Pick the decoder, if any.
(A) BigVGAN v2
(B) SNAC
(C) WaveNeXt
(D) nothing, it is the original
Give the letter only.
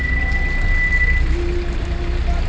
D